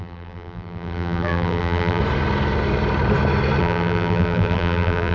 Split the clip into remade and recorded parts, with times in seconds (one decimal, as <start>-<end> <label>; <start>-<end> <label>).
0.0-2.0 remade; 2.0-3.6 recorded; 3.6-5.1 remade